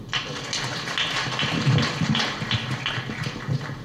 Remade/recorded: recorded